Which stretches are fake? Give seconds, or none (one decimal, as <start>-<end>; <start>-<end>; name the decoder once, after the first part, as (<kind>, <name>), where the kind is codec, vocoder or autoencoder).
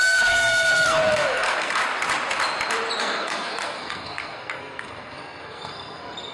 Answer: 0.0-1.8 (codec, SNAC); 3.0-6.3